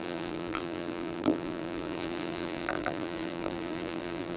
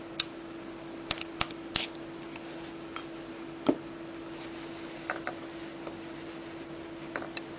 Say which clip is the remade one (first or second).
first